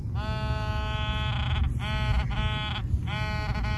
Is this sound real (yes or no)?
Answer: yes